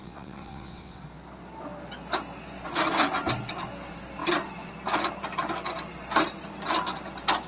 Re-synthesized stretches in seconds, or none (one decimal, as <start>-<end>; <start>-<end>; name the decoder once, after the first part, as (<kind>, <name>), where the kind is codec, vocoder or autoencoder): 0.0-1.0 (vocoder, WaveNeXt)